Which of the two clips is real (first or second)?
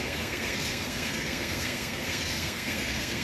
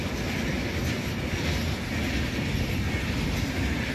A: second